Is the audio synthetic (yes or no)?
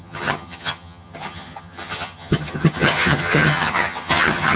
yes